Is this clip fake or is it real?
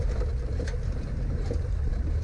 fake